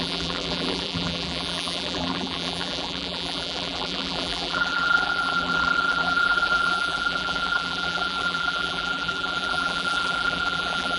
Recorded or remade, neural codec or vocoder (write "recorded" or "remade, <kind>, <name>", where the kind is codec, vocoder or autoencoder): remade, vocoder, BigVGAN v2